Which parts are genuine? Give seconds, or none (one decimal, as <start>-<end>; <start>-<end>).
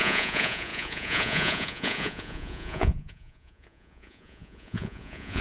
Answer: none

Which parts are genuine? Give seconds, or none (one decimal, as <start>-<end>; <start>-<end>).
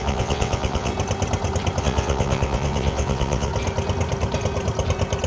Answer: 0.9-1.8; 3.5-5.3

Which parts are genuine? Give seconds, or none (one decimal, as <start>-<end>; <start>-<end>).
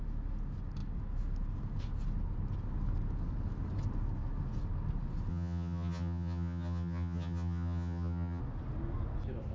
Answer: 0.0-5.3; 8.4-9.5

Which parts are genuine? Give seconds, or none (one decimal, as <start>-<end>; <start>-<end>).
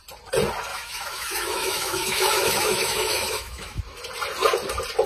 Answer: 0.0-0.7; 3.8-5.1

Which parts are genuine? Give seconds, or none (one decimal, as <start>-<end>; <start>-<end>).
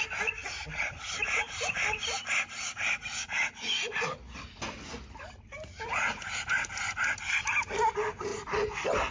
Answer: 0.0-9.1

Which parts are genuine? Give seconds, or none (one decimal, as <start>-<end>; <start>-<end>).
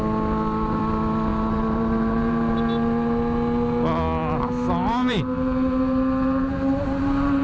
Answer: 0.0-1.3; 2.5-5.0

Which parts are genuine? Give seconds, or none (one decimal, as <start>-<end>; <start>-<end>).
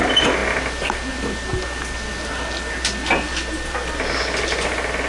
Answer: 0.0-5.1